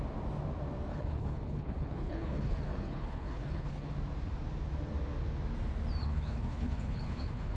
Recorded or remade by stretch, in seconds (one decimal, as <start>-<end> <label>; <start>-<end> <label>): 0.0-0.9 recorded; 0.9-3.9 remade; 3.9-6.0 recorded; 6.0-7.6 remade